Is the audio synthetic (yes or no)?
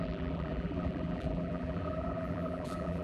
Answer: yes